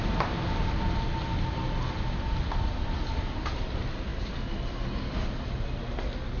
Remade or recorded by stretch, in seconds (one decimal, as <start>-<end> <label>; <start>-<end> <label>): 0.0-6.4 recorded